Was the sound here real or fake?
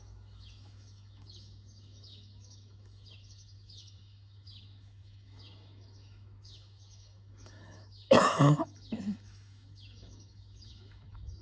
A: fake